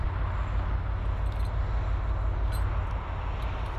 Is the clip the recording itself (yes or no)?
yes